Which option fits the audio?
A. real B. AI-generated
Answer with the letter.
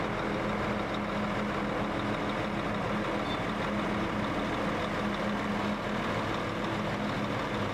A